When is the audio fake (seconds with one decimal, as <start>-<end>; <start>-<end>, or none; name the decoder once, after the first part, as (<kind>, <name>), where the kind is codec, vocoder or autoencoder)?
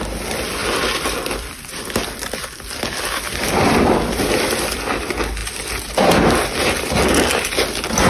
0.6-5.0 (vocoder, BigVGAN v2)